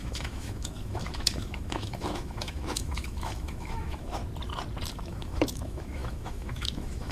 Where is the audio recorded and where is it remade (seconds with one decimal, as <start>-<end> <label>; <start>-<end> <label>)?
0.0-4.2 remade; 4.2-4.9 recorded; 4.9-7.1 remade